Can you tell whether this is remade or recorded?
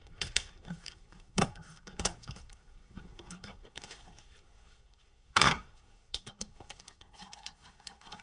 remade